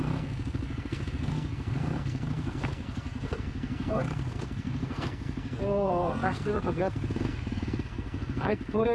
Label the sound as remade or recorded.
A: remade